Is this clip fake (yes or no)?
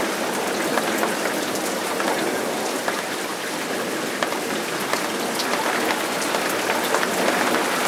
no